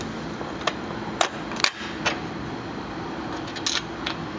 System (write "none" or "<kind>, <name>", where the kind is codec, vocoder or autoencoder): none